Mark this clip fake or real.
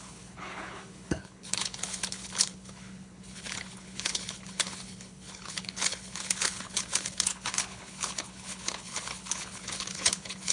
fake